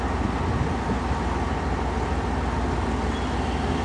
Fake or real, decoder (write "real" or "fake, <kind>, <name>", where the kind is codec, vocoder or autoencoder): real